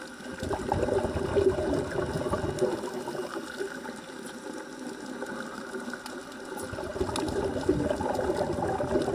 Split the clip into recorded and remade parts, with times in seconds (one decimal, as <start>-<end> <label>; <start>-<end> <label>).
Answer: 0.0-9.1 recorded